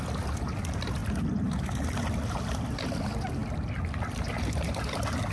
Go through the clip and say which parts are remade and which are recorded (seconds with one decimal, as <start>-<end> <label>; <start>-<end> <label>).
0.0-5.3 recorded